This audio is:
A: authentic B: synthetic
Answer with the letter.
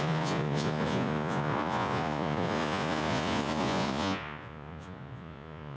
B